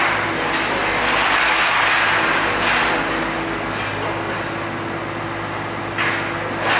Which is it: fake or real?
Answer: real